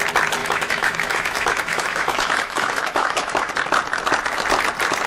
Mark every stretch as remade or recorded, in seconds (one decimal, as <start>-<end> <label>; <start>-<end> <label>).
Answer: 0.0-0.4 recorded; 0.4-3.5 remade; 3.5-5.1 recorded